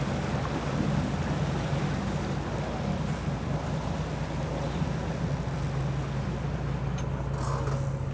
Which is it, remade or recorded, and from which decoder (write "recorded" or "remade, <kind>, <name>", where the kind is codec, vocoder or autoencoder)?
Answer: recorded